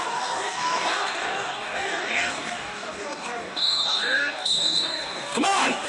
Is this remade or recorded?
remade